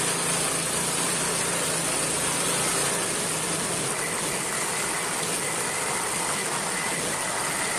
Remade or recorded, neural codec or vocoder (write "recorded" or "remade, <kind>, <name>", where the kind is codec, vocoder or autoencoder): recorded